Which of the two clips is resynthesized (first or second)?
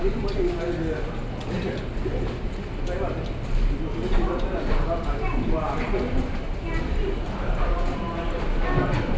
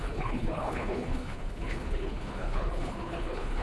second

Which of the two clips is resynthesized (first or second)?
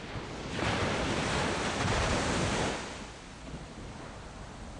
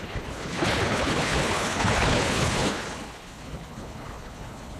second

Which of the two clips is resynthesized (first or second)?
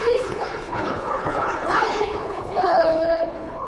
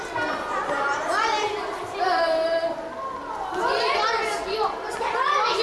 first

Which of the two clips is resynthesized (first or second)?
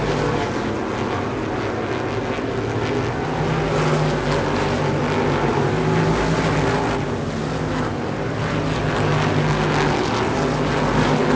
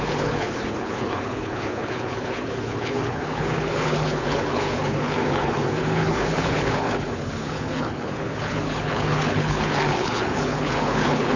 second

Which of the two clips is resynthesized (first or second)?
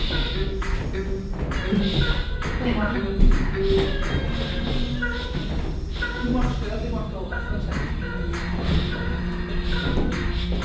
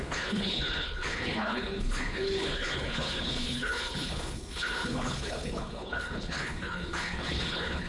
second